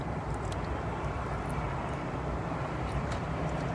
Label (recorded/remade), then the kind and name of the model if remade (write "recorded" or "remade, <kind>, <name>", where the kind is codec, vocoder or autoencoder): remade, vocoder, BigVGAN v2